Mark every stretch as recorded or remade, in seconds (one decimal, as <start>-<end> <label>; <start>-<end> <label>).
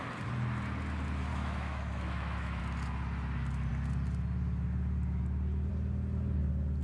0.0-1.3 recorded; 1.3-2.6 remade; 2.6-6.8 recorded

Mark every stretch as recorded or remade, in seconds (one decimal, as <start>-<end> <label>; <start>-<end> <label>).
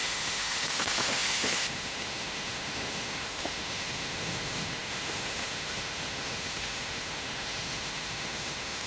0.0-8.9 remade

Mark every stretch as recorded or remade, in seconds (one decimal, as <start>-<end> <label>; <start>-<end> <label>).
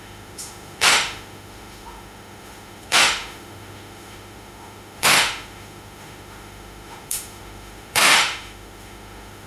0.0-9.5 remade